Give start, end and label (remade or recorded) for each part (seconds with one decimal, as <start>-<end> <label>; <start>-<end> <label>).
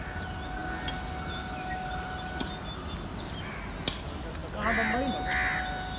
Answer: 0.0-6.0 recorded